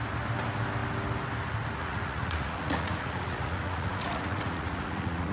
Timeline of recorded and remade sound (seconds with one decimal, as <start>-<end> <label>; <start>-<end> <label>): 0.0-1.8 recorded; 1.8-5.3 remade